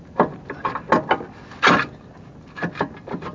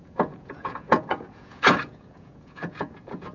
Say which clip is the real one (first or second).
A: first